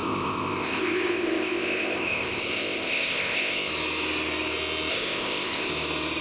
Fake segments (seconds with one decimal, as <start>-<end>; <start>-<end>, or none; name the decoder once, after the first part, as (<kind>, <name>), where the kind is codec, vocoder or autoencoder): 0.0-3.7 (codec, ZipCodec); 4.9-5.7